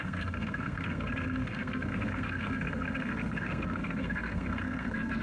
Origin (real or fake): fake